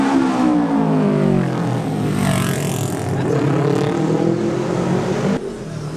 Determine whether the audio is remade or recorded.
recorded